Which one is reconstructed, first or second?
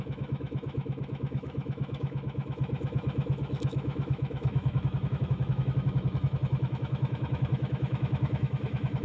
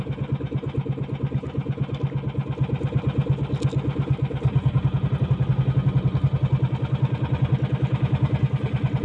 first